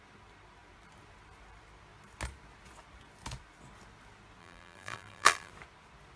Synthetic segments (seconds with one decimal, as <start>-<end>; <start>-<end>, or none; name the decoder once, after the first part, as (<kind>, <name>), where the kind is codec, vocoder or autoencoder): 4.4-5.5 (vocoder, BigVGAN v2)

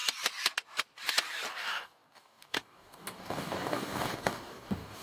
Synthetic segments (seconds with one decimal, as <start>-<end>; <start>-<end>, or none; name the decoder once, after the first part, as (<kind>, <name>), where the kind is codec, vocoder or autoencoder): 1.5-5.0 (codec, DAC)

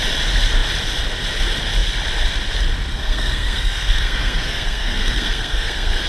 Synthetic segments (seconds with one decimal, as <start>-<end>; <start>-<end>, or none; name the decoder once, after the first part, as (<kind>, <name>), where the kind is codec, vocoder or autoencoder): 2.9-6.1 (codec, SNAC)

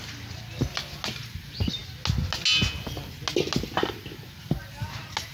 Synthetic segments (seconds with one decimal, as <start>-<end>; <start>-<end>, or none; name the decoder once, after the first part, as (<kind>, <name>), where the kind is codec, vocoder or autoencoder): none

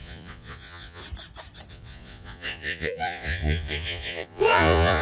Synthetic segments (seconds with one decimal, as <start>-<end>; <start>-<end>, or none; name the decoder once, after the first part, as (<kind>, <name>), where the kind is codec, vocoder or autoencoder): 0.0-1.0 (vocoder, Vocos); 1.7-5.0

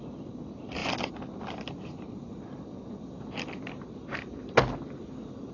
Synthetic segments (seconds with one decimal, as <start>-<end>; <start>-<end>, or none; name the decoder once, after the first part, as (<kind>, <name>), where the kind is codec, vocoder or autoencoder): none